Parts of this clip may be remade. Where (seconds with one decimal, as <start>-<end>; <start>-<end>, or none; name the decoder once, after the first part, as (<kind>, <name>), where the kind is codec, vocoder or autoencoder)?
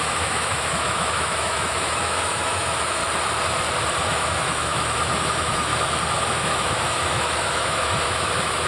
0.0-3.0 (autoencoder, DAC-VAE); 4.0-5.7; 6.3-8.7